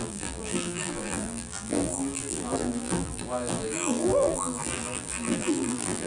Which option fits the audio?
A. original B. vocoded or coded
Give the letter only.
B